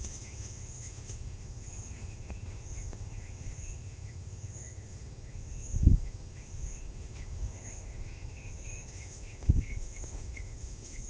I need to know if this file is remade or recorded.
remade